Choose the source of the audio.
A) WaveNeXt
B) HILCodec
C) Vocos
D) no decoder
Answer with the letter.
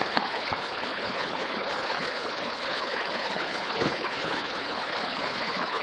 B